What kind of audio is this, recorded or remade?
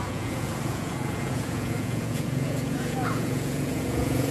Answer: remade